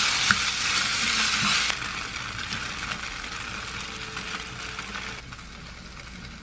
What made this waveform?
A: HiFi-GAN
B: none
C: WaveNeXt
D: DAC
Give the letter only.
B